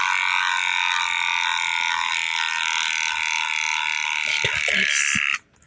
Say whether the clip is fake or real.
real